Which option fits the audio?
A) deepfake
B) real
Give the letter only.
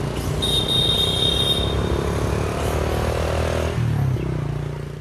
B